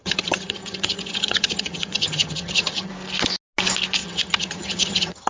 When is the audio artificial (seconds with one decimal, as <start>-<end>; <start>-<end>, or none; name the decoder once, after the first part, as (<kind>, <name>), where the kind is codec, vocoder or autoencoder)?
0.0-2.9 (vocoder, HiFi-GAN); 4.0-5.3